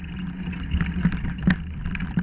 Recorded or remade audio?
recorded